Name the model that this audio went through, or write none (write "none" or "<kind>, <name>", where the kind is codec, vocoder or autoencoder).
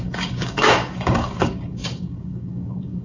codec, DAC